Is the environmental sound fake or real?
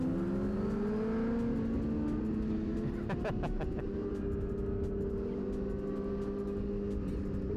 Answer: real